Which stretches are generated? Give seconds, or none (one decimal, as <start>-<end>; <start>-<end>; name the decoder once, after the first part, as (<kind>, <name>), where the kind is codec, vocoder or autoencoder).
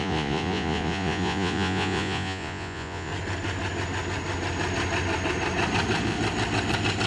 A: 0.0-3.1 (vocoder, Vocos)